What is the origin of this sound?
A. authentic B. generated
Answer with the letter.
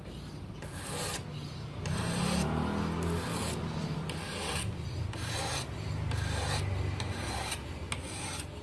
A